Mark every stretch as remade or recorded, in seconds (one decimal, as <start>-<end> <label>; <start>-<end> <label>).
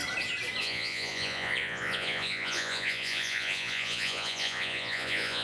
0.0-0.6 recorded; 0.6-5.4 remade